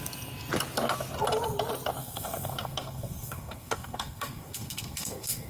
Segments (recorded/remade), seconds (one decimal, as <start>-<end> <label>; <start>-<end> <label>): 0.0-2.0 recorded; 2.0-5.5 remade

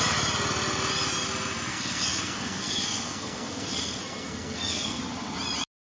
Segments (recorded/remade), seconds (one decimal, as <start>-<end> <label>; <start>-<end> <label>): 0.0-1.7 recorded; 1.7-5.0 remade; 5.0-5.8 recorded

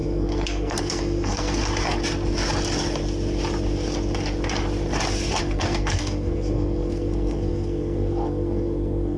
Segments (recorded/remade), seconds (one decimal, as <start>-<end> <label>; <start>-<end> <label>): 0.0-1.6 remade; 1.6-5.4 recorded; 5.4-9.2 remade

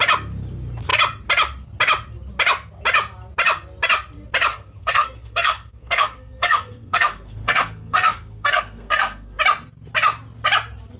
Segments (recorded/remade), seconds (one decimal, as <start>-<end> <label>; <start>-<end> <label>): 0.0-4.5 recorded; 4.5-9.4 remade; 9.4-11.0 recorded

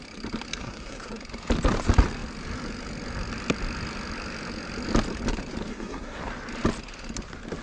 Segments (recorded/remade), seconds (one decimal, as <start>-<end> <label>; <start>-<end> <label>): 0.0-0.6 recorded; 0.6-1.2 remade; 1.2-5.7 recorded; 5.7-6.2 remade; 6.2-7.6 recorded